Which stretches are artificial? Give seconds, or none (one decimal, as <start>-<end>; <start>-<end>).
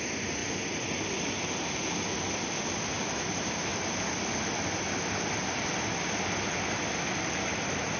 none